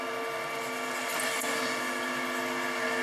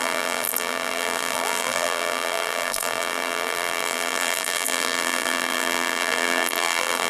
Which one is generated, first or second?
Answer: second